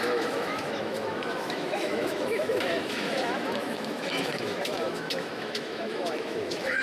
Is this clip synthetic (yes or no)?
yes